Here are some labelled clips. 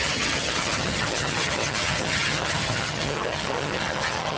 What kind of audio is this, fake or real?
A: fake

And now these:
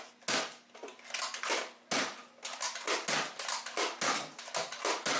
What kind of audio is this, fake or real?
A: real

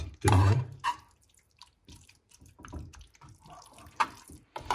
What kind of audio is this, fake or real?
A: fake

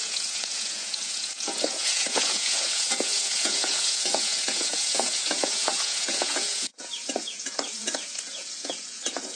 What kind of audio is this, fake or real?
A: fake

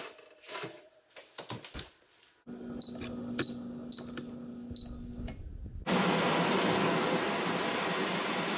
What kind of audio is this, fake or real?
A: real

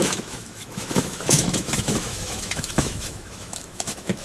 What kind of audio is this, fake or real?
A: fake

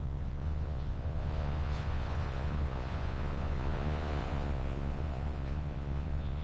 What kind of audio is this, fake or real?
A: fake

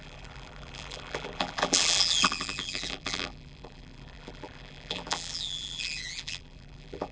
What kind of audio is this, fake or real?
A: fake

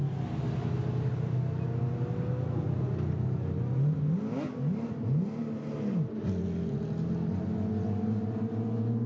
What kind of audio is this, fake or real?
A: real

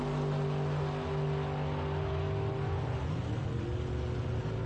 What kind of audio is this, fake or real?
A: real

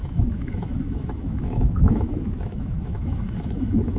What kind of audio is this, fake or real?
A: fake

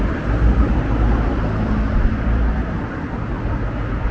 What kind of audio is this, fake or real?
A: fake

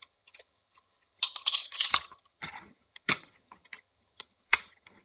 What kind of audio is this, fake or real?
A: fake